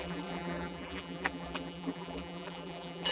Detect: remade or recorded remade